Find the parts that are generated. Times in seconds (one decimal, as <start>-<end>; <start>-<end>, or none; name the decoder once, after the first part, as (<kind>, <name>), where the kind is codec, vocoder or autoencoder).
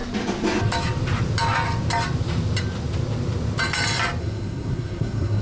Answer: 4.2-5.4 (codec, SNAC)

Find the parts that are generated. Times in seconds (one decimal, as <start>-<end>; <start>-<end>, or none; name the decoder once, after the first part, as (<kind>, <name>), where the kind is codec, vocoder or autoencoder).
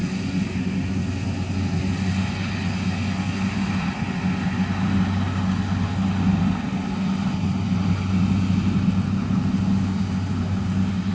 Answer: none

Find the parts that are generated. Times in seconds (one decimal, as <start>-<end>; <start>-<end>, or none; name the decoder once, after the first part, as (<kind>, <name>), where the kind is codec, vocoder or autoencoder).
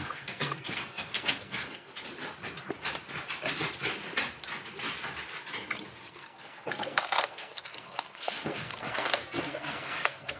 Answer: 0.0-1.9 (codec, SNAC); 6.1-10.4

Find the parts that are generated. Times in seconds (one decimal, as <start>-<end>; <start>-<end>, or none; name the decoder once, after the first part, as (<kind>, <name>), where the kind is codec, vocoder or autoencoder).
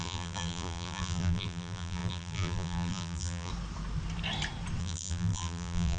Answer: 0.0-3.5 (vocoder, BigVGAN v2); 4.8-6.0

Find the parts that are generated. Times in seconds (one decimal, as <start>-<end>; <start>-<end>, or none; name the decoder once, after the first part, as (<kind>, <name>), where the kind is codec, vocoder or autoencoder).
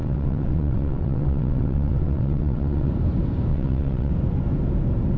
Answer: 0.0-2.9 (vocoder, WaveNeXt); 3.5-4.1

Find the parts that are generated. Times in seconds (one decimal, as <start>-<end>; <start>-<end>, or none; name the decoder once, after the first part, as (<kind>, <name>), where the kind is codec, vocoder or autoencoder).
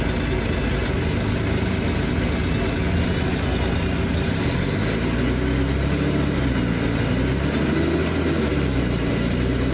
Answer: none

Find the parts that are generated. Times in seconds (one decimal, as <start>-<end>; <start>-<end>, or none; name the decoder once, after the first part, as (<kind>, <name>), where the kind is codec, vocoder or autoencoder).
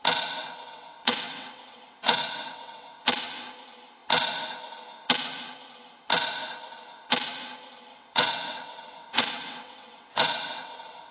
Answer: 0.4-3.0 (vocoder, WaveNeXt); 7.9-11.1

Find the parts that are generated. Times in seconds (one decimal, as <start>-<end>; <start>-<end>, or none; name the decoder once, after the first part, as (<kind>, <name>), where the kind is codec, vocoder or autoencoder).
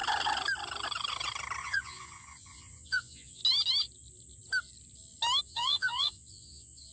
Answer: 1.6-3.4 (vocoder, Vocos); 5.4-6.9